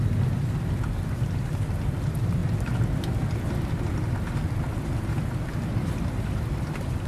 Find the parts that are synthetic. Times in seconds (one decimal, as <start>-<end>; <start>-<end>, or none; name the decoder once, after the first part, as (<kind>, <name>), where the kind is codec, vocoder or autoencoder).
none